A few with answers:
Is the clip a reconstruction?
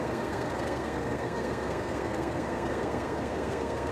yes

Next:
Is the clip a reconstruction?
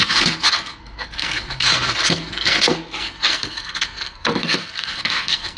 yes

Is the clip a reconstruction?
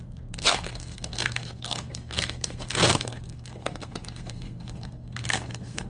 yes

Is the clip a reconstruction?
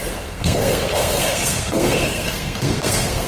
yes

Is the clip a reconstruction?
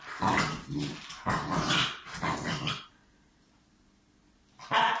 no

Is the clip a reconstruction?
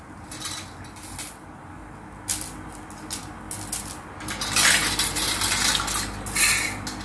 no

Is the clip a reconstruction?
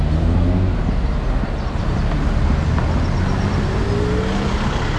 no